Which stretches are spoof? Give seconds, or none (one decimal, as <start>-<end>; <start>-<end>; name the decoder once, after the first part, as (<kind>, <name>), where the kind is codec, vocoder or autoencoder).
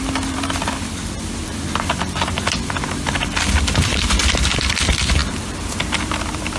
0.0-6.6 (vocoder, BigVGAN v2)